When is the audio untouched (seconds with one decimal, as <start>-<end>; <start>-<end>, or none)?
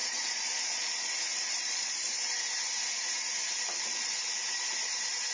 1.1-1.5; 2.4-5.3